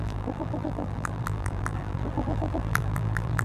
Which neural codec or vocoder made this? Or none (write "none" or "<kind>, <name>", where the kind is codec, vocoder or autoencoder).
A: vocoder, BigVGAN v2